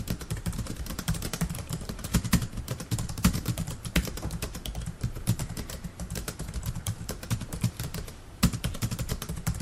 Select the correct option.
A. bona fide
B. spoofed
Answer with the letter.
B